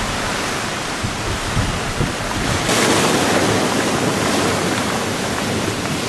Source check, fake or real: real